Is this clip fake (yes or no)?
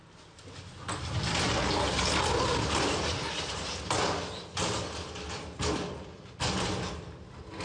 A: no